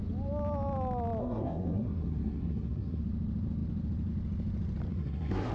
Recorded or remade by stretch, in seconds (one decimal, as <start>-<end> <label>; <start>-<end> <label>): 0.0-1.2 recorded; 1.2-3.0 remade; 3.0-4.9 recorded; 4.9-5.5 remade